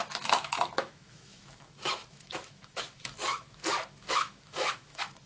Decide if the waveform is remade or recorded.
remade